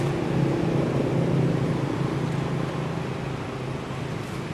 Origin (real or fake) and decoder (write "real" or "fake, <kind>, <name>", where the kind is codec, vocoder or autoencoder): real